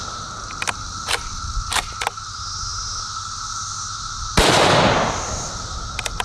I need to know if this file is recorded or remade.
recorded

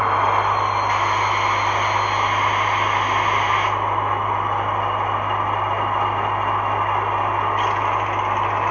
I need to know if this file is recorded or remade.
recorded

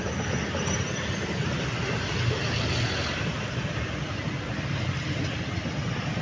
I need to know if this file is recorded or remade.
recorded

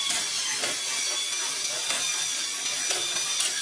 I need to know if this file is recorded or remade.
recorded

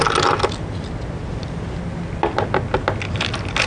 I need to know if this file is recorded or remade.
recorded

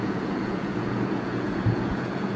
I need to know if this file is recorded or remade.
remade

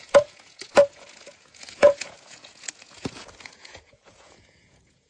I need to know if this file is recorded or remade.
remade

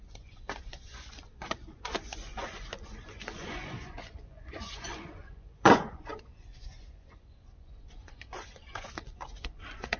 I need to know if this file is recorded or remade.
remade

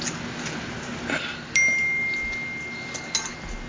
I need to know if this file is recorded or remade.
recorded